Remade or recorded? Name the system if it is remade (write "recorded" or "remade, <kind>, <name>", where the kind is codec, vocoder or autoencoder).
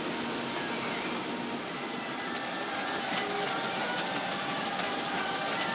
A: recorded